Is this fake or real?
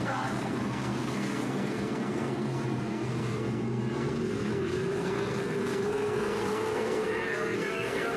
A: fake